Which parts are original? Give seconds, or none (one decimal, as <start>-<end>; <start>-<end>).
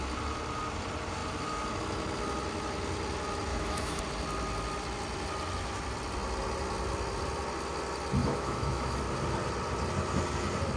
0.0-3.5; 4.0-8.2; 9.0-10.8